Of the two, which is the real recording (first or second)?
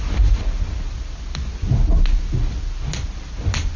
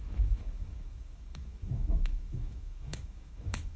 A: first